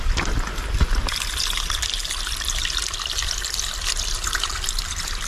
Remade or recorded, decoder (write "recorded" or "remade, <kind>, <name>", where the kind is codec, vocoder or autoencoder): recorded